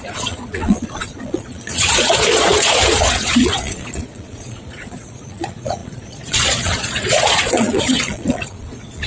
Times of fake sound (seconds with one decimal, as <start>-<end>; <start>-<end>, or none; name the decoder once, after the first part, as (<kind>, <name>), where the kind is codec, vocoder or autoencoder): 0.0-9.1 (vocoder, Vocos)